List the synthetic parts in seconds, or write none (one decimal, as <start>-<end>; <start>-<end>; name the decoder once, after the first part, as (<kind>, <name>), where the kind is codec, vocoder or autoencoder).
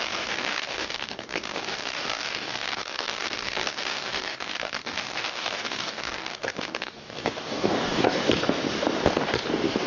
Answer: 0.0-8.2 (codec, DAC); 9.5-9.9